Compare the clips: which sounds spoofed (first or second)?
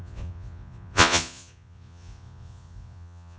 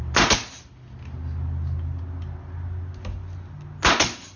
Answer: first